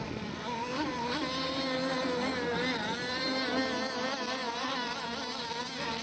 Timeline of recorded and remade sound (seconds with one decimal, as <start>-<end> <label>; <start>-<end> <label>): 0.0-6.0 recorded